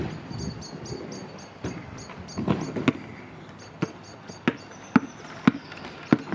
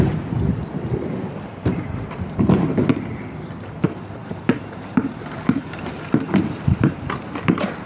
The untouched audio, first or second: first